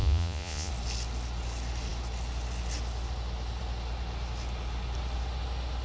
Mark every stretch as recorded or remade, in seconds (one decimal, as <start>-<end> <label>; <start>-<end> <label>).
0.0-0.7 remade; 0.7-5.8 recorded